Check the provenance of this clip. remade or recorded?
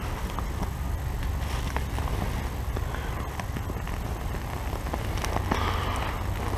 recorded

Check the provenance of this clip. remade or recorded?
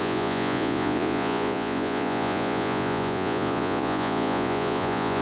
remade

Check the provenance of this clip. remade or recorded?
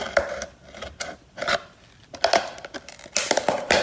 recorded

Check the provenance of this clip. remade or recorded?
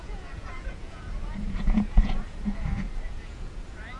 remade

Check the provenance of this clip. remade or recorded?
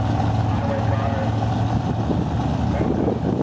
recorded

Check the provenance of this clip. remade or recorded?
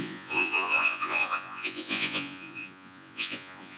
remade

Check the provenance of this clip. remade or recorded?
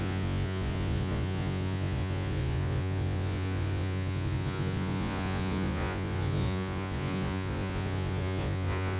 remade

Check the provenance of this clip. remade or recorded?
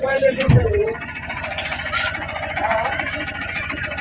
remade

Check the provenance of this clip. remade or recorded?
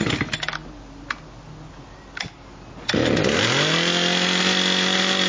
recorded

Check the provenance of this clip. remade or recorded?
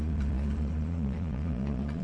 remade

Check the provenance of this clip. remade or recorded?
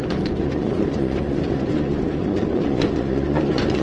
remade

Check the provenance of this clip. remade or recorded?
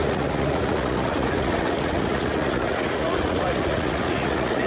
remade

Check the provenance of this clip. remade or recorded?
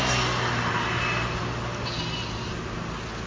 recorded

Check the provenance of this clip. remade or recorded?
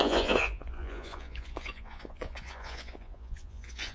remade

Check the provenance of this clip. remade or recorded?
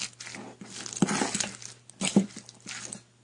recorded